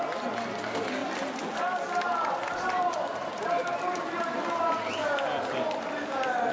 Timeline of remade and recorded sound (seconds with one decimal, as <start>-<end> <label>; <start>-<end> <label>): 0.0-6.5 recorded